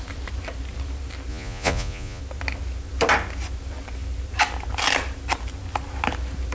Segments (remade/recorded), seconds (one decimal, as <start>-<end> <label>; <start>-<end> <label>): 0.0-1.3 recorded; 1.3-2.2 remade; 2.2-6.5 recorded